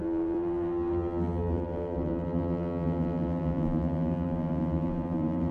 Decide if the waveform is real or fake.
fake